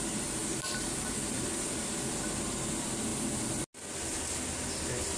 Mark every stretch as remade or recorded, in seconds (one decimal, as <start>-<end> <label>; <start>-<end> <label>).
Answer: 0.0-5.2 recorded

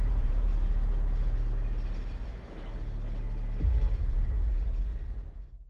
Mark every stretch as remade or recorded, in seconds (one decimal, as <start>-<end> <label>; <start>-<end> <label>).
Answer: 0.0-0.5 remade; 0.5-3.9 recorded; 3.9-4.9 remade; 4.9-5.7 recorded

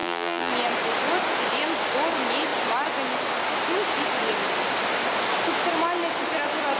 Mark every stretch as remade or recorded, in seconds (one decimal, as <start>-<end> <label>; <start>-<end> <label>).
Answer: 0.0-0.5 remade; 0.5-6.8 recorded

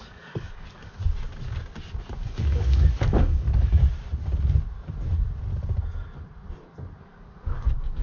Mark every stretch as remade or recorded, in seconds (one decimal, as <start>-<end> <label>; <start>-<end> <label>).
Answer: 0.0-1.0 remade; 1.0-2.1 recorded; 2.1-3.8 remade; 3.8-7.0 recorded; 7.0-8.0 remade

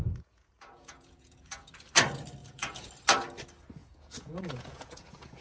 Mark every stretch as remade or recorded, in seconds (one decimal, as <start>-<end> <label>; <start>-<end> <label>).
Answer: 0.0-1.7 remade; 1.7-2.4 recorded; 2.4-2.9 remade; 2.9-3.8 recorded; 3.8-5.4 remade

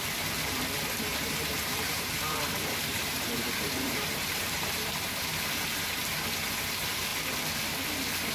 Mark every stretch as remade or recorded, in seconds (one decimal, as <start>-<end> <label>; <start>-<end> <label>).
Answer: 0.0-1.1 recorded; 1.1-5.2 remade; 5.2-8.3 recorded

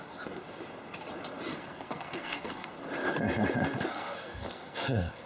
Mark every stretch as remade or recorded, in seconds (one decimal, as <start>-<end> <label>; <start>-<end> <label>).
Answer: 0.0-1.5 recorded; 1.5-2.7 remade; 2.7-3.9 recorded; 3.9-5.3 remade